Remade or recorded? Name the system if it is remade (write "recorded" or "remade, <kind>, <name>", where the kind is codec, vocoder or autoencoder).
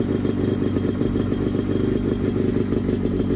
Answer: recorded